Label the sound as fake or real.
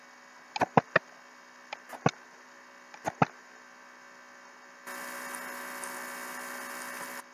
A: real